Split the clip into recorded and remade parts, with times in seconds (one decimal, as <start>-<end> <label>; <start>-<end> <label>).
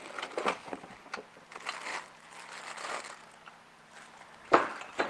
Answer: 0.0-5.1 recorded